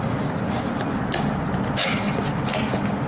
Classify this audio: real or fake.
real